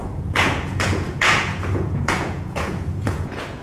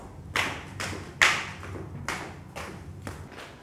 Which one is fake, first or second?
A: first